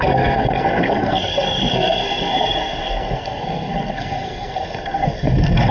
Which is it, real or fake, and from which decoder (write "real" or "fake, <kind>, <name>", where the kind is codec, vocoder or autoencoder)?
fake, codec, SNAC